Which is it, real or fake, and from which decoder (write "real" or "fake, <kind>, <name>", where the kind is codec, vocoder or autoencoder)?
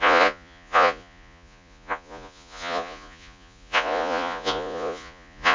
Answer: fake, vocoder, Vocos